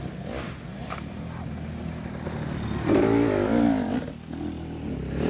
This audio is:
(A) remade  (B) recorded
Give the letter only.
B